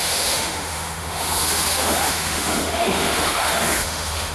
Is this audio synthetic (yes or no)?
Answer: yes